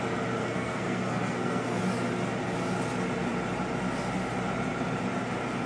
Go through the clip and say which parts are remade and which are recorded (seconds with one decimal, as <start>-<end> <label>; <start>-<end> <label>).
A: 0.0-0.4 recorded; 0.4-1.8 remade; 1.8-5.7 recorded